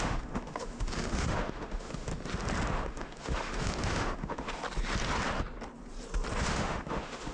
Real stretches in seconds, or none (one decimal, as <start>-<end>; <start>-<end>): 2.1-2.9; 4.6-6.4